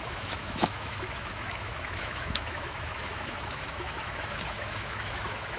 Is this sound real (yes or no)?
no